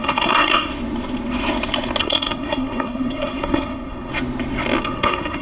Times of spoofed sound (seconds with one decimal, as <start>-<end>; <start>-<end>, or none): 0.0-0.7; 2.0-4.1; 4.8-5.4